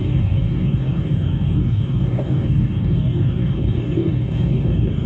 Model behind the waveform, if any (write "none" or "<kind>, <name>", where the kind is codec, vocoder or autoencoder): codec, DAC